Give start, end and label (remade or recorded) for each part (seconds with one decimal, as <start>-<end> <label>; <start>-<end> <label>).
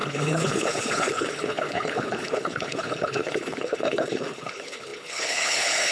0.0-5.9 remade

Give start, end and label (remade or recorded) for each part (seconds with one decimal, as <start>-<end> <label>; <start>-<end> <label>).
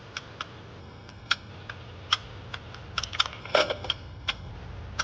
0.0-0.8 recorded; 0.8-1.5 remade; 1.5-3.4 recorded; 3.4-4.5 remade; 4.5-5.0 recorded